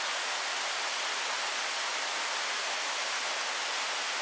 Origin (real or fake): real